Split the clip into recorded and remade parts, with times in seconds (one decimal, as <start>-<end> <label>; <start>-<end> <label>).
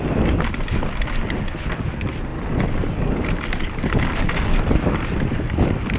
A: 0.0-6.0 recorded